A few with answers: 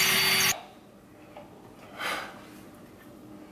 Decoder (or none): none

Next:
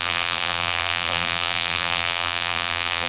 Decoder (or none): vocoder, BigVGAN v2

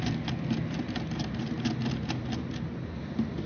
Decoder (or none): none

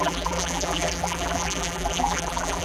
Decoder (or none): vocoder, BigVGAN v2